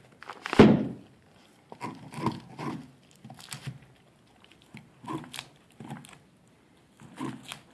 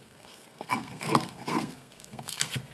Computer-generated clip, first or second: second